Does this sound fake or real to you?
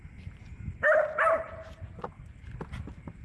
real